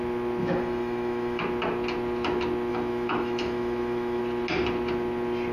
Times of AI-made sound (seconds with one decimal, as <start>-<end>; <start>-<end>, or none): 0.4-1.4; 2.7-4.2

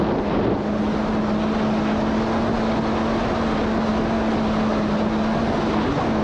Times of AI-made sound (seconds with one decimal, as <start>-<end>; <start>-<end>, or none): none

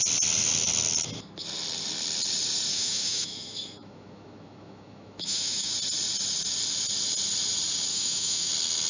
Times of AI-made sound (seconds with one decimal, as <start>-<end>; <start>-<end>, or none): 2.7-5.7; 7.9-8.5